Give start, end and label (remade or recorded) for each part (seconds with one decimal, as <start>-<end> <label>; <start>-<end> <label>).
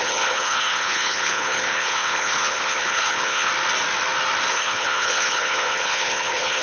0.0-3.5 remade; 3.5-4.5 recorded; 4.5-6.6 remade